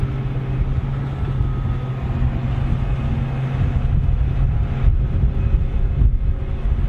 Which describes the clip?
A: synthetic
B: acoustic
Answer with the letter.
B